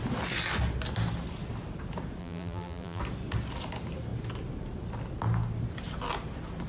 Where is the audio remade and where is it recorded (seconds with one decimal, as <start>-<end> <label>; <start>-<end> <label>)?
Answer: 0.0-2.2 recorded; 2.2-3.0 remade; 3.0-6.7 recorded